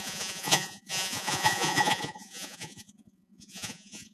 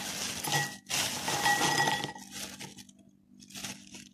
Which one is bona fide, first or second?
second